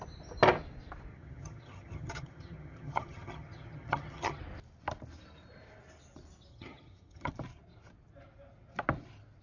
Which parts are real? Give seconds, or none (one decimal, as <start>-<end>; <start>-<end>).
0.0-1.1; 4.4-6.5; 7.3-9.4